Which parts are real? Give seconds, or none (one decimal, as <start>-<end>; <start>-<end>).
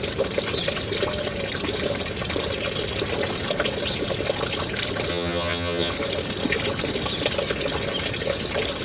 0.0-5.1; 5.9-8.8